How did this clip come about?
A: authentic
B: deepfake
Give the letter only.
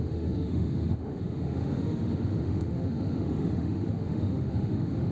B